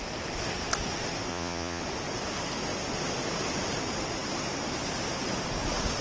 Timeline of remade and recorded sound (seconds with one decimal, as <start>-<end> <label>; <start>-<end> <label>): 0.0-1.3 recorded; 1.3-1.8 remade; 1.8-6.0 recorded